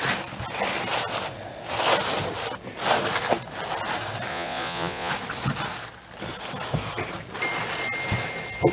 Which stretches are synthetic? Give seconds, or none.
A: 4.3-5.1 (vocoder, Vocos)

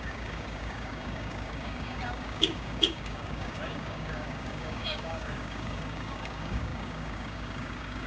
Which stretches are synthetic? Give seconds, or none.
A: 0.0-8.1 (codec, DAC)

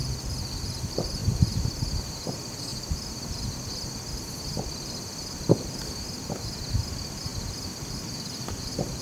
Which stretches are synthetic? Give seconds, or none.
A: none

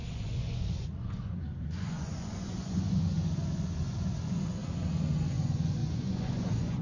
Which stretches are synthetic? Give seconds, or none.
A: 0.0-4.6 (vocoder, Vocos); 5.3-6.8

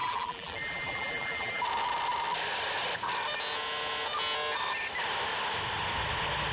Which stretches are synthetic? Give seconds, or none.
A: 0.0-1.6 (vocoder, BigVGAN v2)

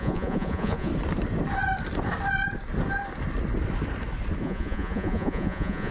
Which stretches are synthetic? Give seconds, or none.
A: 0.0-0.9 (vocoder, Vocos); 4.4-5.9